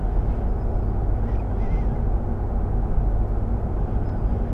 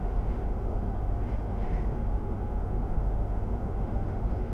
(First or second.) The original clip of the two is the first